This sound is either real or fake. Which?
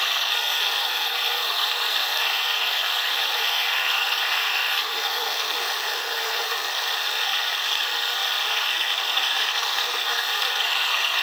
fake